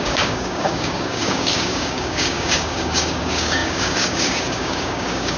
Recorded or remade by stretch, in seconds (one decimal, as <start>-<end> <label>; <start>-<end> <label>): 0.0-5.4 remade